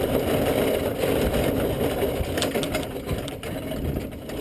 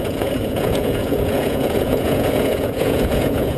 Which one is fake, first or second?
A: second